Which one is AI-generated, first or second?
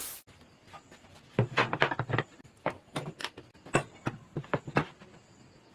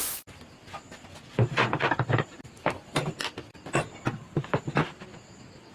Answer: second